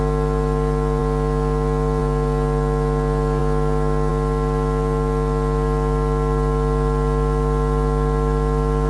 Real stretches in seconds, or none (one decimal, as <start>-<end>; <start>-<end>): 0.0-8.9